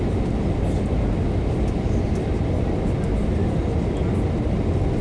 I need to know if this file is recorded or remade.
recorded